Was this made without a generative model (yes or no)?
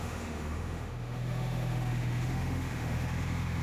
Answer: no